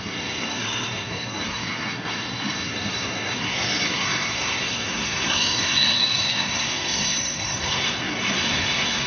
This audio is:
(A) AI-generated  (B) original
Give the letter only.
A